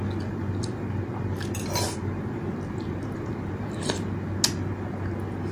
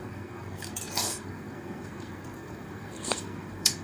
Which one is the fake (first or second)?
second